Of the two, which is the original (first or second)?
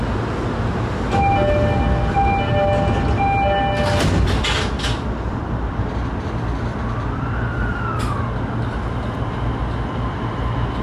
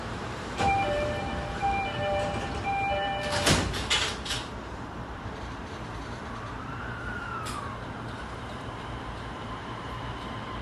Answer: first